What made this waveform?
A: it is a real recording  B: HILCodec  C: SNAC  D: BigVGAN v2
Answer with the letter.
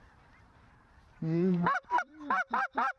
D